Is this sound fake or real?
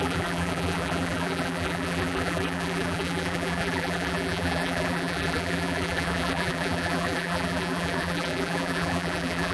fake